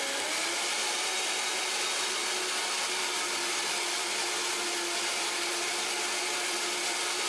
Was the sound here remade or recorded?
recorded